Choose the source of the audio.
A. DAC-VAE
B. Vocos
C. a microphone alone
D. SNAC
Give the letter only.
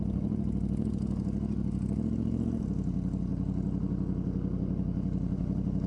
C